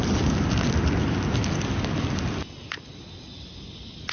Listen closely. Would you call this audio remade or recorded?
recorded